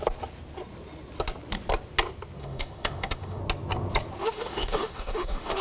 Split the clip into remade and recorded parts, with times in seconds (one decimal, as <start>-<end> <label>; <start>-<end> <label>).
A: 0.0-2.4 recorded; 2.4-3.4 remade; 3.4-4.2 recorded; 4.2-5.6 remade